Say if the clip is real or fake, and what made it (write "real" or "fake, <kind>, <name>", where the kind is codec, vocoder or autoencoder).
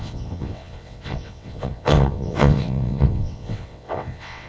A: fake, vocoder, WaveNeXt